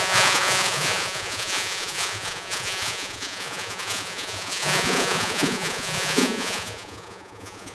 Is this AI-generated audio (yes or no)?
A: yes